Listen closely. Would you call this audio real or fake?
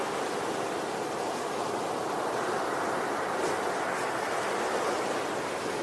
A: real